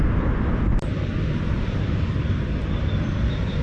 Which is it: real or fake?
real